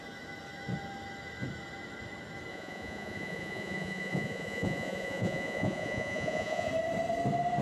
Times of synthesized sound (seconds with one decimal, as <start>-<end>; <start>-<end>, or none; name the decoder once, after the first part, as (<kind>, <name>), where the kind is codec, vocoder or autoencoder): 2.5-6.7 (vocoder, Vocos)